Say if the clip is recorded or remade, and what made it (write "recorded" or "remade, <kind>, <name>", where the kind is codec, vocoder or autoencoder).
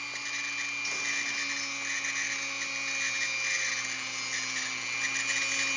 recorded